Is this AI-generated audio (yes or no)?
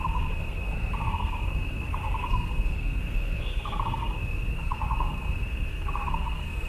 yes